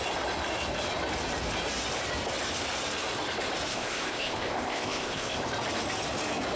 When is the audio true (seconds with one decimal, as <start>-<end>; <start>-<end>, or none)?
0.0-3.7; 5.4-6.6